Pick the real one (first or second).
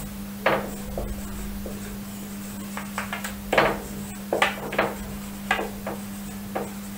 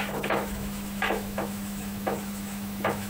first